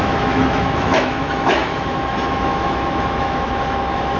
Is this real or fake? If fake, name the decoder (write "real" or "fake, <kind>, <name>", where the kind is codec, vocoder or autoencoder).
fake, autoencoder, DAC-VAE